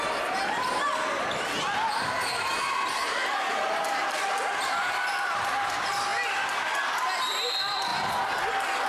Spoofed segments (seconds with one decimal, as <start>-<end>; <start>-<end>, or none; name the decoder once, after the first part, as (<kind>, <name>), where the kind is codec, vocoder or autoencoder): 3.2-3.8 (vocoder, BigVGAN v2); 7.9-8.5